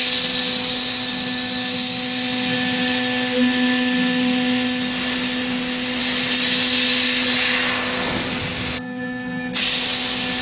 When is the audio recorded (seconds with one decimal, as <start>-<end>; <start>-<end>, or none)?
0.0-10.4